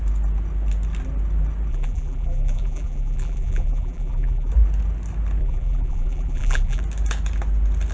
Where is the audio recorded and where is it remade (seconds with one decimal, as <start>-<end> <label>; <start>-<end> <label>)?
0.0-1.7 recorded; 1.7-4.5 remade; 4.5-5.4 recorded; 5.4-6.8 remade; 6.8-7.9 recorded